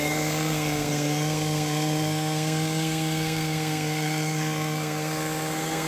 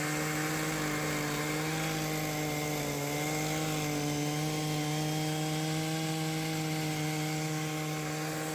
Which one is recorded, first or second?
second